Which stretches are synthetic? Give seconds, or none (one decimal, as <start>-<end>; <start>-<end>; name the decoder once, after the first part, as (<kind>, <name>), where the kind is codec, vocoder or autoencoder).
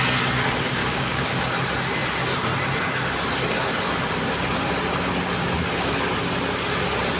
0.8-1.4 (codec, DAC)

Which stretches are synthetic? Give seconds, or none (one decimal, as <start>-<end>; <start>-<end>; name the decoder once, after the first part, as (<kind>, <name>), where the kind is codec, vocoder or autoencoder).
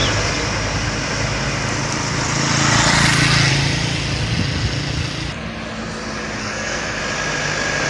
6.4-7.0 (codec, SNAC)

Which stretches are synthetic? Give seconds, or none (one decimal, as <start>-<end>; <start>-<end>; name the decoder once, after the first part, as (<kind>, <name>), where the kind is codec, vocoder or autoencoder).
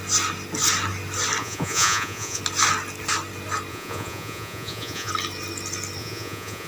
1.4-2.4 (vocoder, Vocos); 3.7-5.1; 6.0-6.7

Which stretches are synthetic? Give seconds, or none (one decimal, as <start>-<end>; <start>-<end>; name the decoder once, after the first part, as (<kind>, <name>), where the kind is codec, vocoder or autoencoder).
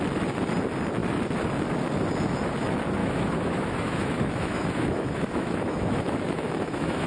3.0-7.1 (autoencoder, DAC-VAE)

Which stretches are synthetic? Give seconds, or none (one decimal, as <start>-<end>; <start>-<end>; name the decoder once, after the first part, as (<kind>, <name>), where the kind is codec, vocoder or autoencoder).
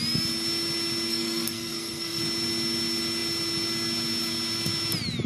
1.1-2.2 (codec, SNAC)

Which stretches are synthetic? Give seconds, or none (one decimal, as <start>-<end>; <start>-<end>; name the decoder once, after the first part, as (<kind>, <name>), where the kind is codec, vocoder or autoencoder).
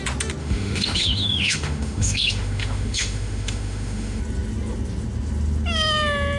0.4-4.2 (autoencoder, DAC-VAE)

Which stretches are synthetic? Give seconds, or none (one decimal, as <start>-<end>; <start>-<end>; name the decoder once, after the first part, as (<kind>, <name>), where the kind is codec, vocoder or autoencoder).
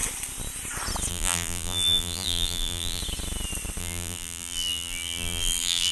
1.1-3.0 (vocoder, BigVGAN v2); 3.8-5.9